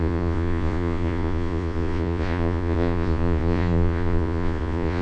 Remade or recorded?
remade